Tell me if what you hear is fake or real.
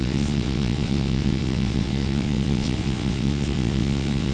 fake